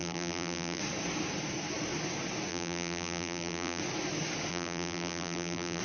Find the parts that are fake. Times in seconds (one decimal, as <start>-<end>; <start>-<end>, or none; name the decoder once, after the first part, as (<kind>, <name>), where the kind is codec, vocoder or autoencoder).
0.0-0.8 (vocoder, BigVGAN v2); 2.5-3.8; 4.5-5.8